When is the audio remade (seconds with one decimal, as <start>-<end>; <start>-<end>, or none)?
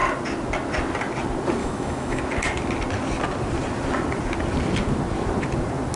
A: 1.6-2.2